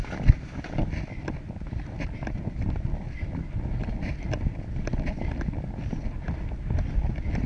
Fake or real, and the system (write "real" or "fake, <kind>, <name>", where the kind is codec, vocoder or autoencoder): real